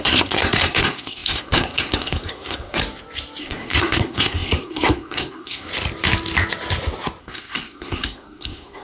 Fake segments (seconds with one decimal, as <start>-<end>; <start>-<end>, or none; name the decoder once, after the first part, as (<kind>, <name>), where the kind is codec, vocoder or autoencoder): 0.0-2.8 (codec, SNAC); 3.4-5.7; 7.2-8.8